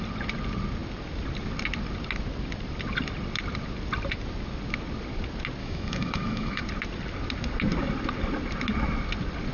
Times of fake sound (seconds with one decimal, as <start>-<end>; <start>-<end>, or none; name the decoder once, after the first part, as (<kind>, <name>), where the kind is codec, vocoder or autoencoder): 5.6-6.6 (autoencoder, DAC-VAE)